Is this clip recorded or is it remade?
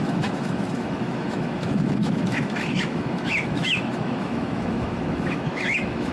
remade